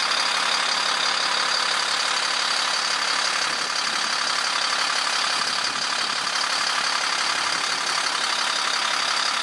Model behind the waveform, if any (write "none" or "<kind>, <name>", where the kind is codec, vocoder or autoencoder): none